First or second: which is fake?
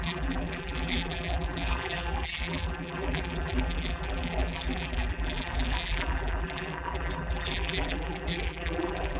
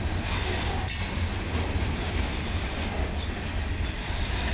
first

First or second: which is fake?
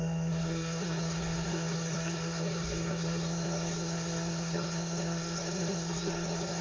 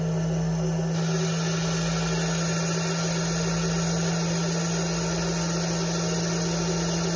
first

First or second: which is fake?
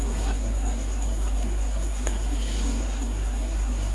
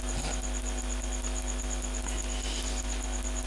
first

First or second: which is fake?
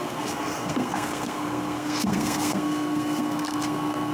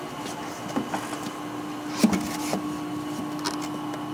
first